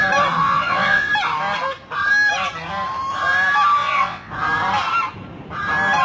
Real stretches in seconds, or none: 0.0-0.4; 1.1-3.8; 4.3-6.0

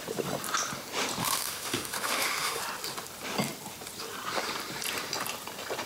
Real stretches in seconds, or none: 0.0-1.2; 2.6-5.9

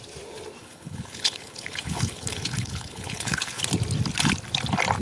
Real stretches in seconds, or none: 0.0-0.6; 3.6-5.0